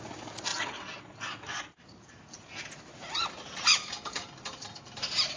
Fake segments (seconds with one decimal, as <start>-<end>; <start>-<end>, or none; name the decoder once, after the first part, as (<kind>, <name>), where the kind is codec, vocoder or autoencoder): none